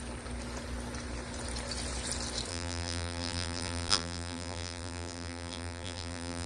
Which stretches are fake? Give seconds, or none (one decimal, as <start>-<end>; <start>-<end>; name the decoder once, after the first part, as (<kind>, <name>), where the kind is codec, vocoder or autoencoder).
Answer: 2.5-6.5 (vocoder, BigVGAN v2)